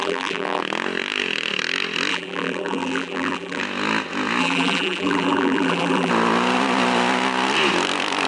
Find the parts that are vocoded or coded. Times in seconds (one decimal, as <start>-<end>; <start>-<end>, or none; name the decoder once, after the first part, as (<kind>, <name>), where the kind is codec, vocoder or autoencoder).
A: 0.0-0.6 (vocoder, BigVGAN v2); 2.1-3.6; 4.4-6.1

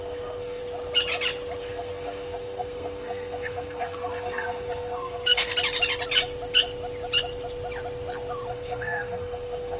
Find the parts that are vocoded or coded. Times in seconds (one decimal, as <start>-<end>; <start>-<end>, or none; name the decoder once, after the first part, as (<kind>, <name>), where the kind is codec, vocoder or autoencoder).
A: 0.0-0.6 (codec, SNAC); 1.6-5.5; 8.5-9.8

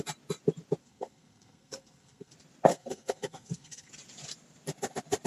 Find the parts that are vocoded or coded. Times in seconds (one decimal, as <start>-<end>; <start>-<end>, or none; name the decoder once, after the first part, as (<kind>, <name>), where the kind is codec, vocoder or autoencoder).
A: 0.8-2.3 (codec, SNAC); 2.7-3.9

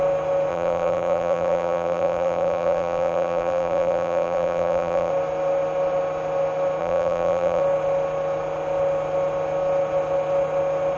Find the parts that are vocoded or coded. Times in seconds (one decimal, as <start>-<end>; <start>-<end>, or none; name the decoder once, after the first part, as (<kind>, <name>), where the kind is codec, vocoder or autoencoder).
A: 0.5-5.1 (vocoder, BigVGAN v2); 6.8-7.6